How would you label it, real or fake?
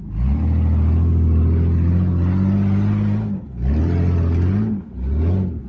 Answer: real